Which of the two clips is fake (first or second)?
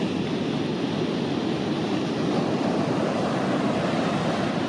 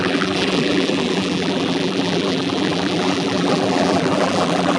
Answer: second